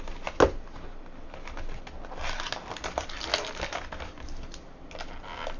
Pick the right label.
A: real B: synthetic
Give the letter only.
A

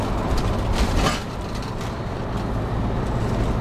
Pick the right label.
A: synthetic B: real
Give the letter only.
B